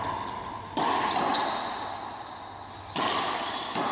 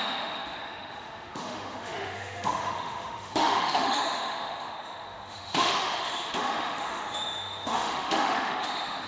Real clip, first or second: first